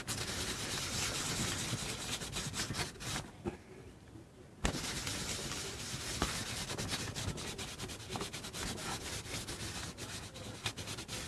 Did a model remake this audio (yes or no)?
no